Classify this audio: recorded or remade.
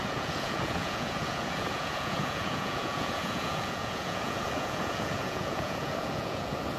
remade